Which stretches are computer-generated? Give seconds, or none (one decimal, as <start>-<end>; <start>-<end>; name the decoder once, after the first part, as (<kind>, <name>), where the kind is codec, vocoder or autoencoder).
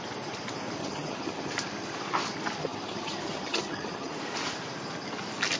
0.8-1.5 (vocoder, HiFi-GAN); 2.6-4.1